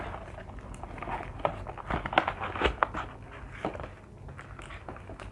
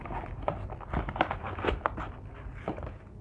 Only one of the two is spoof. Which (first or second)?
second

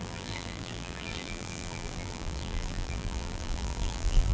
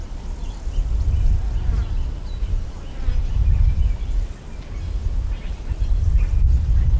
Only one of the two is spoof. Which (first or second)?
first